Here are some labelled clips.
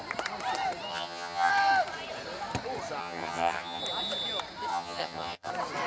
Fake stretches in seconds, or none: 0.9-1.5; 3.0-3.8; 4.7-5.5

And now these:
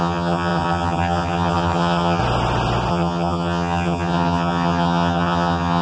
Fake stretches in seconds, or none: 0.0-2.2; 2.9-5.8

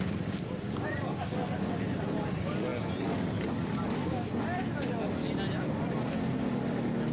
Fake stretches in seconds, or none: none

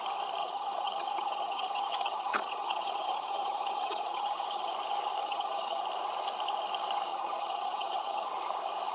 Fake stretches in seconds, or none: 0.4-4.7; 5.2-5.8; 7.1-8.3